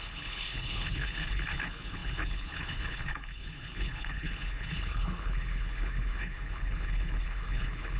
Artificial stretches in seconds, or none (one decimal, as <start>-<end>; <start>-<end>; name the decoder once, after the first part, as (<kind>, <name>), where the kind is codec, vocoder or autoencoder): 0.0-8.0 (codec, HILCodec)